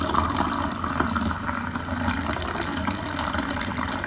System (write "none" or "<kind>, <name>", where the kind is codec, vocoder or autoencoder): none